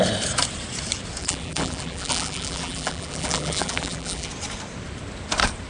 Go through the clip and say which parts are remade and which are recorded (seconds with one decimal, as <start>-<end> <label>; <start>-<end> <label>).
0.0-1.2 recorded; 1.2-4.3 remade; 4.3-5.7 recorded